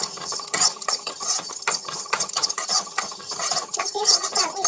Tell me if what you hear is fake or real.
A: fake